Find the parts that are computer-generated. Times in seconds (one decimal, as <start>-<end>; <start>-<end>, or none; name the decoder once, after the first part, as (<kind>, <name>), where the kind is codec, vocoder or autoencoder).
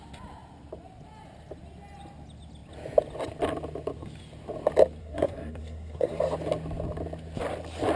5.0-6.2 (codec, SNAC)